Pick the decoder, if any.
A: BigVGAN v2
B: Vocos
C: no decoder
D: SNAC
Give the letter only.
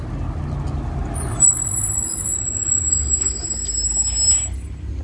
C